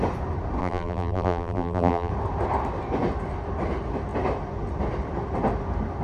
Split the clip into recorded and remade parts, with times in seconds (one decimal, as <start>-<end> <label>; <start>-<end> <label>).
0.0-0.6 recorded; 0.6-2.1 remade; 2.1-6.0 recorded